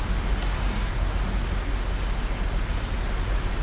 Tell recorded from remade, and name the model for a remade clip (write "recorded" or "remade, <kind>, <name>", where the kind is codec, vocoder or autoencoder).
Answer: recorded